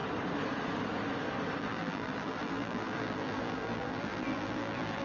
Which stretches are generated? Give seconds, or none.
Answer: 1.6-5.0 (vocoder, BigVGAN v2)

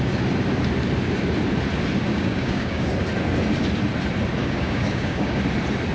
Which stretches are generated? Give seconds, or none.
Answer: 2.1-2.9 (codec, DAC); 4.4-5.4

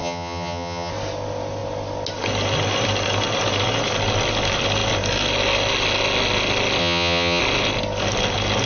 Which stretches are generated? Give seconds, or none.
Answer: 0.0-0.9 (vocoder, HiFi-GAN); 6.8-7.4

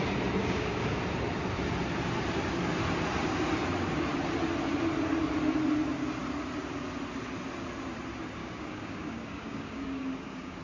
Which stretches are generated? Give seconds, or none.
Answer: 0.4-1.0 (codec, DAC); 8.4-10.6

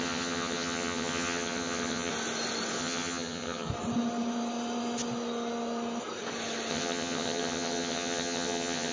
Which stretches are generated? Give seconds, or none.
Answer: 0.0-2.1 (vocoder, HiFi-GAN); 2.8-3.7; 6.7-8.9